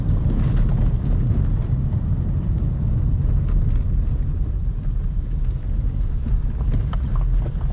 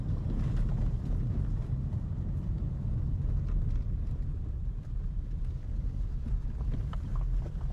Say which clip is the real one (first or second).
first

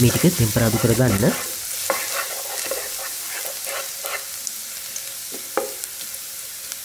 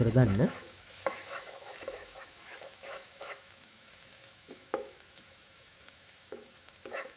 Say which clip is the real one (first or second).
first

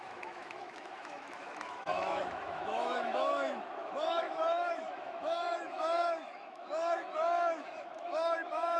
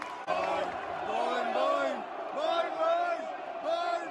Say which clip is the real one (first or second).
second